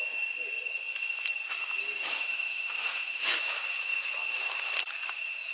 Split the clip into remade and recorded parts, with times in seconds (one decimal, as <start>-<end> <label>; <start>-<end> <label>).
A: 0.0-2.1 recorded; 2.1-3.3 remade; 3.3-5.5 recorded